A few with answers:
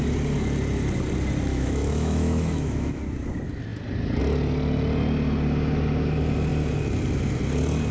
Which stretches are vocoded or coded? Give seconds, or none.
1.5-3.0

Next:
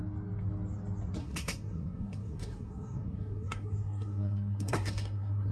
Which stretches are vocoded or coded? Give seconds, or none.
1.2-5.5

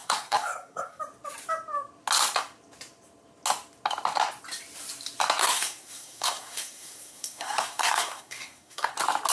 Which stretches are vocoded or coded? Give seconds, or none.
0.0-1.0; 5.4-8.9

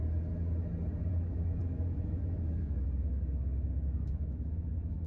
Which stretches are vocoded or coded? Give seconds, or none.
1.1-5.1

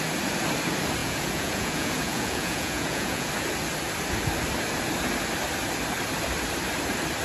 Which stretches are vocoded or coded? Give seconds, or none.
1.0-3.3

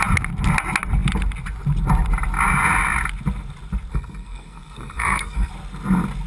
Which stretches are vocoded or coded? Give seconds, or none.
3.9-5.5

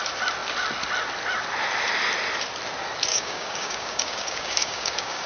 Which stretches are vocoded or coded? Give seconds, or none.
3.1-5.3